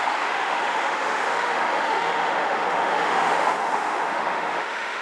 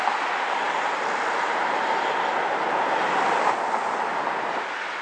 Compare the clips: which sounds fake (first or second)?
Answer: first